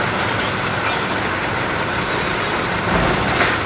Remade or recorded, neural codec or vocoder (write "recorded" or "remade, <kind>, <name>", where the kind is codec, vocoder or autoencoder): recorded